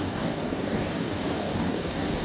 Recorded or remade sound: remade